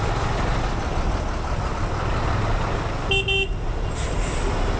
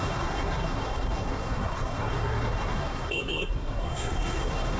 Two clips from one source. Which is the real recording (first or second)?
first